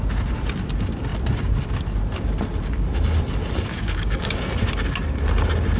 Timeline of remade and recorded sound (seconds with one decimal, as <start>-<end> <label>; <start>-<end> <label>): 0.0-3.7 recorded; 3.7-4.4 remade; 4.4-5.8 recorded